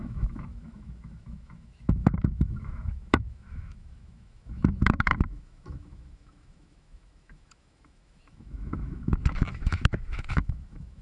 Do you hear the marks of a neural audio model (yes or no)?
yes